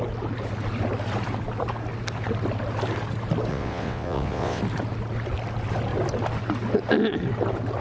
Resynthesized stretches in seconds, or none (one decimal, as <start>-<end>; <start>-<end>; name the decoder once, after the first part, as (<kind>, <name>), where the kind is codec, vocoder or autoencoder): 3.5-4.6 (vocoder, WaveNeXt)